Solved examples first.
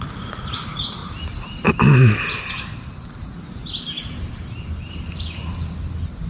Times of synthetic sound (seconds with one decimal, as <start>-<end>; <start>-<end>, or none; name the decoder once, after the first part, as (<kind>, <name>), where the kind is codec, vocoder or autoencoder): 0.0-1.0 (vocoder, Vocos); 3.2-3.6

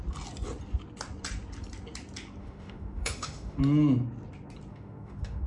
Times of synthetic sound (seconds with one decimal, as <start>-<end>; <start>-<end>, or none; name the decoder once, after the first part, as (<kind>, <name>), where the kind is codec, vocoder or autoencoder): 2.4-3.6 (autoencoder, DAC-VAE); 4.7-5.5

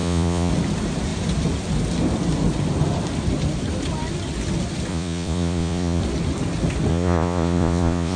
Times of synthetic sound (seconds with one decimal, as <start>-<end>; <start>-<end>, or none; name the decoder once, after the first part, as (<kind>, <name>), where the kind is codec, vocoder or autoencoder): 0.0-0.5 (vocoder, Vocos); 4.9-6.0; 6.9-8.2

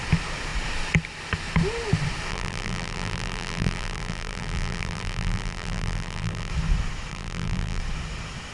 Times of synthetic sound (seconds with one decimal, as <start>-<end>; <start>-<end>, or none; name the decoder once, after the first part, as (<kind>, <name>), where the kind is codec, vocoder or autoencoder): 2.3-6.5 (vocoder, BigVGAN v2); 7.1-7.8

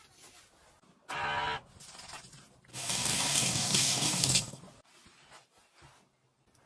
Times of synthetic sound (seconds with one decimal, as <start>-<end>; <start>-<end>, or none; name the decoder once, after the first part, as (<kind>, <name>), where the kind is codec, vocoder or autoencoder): 2.7-4.6 (codec, DAC)